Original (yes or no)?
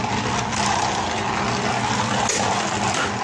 yes